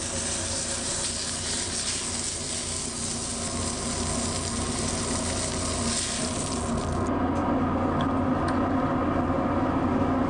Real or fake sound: real